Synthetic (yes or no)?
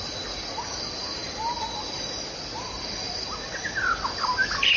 no